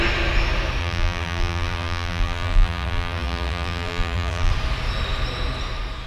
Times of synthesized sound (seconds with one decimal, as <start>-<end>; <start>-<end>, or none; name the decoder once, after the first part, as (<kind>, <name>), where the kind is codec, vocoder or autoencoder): 0.8-4.5 (vocoder, BigVGAN v2)